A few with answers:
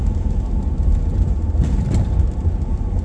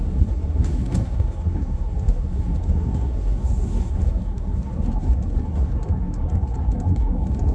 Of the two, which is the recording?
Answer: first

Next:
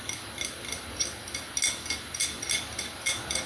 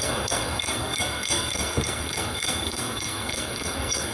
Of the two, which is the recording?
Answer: first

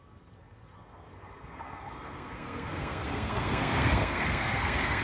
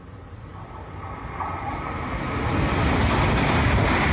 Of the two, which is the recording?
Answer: second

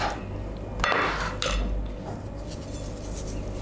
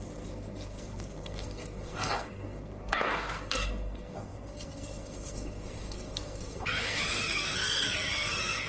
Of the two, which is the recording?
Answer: first